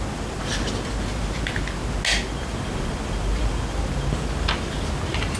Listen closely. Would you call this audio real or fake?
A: real